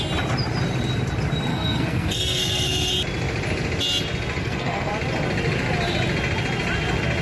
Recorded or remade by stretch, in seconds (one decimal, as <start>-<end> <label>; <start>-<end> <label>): 0.0-1.5 recorded; 1.5-2.9 remade; 2.9-4.4 recorded; 4.4-4.9 remade; 4.9-7.2 recorded